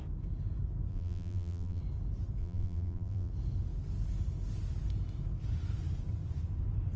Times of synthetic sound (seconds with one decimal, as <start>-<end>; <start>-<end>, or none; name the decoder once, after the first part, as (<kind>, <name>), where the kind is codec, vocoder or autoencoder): 0.9-1.8 (vocoder, BigVGAN v2); 2.4-3.3